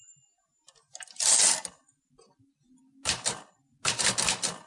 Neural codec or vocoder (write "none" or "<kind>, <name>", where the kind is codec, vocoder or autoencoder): none